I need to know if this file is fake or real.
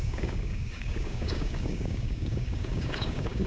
fake